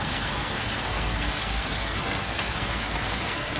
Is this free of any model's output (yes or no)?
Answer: no